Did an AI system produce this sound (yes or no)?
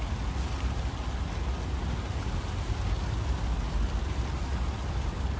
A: no